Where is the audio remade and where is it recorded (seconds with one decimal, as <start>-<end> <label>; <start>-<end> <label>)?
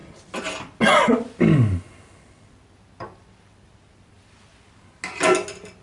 0.0-5.8 recorded